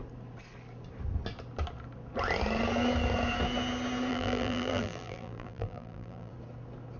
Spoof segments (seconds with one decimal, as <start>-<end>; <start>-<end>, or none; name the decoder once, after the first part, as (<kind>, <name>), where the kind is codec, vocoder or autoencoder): 4.1-6.3 (vocoder, BigVGAN v2)